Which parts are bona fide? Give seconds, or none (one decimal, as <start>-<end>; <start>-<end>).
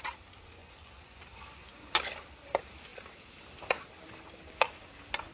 0.0-0.6; 2.0-5.3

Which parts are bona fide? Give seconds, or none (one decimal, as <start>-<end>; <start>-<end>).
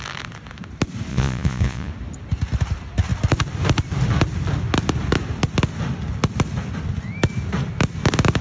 0.0-1.1; 1.9-8.4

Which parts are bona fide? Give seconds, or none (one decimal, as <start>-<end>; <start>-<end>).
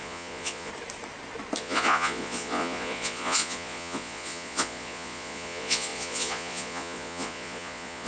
0.7-1.6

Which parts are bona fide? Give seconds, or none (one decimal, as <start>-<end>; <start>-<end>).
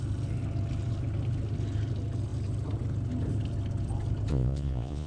0.0-4.3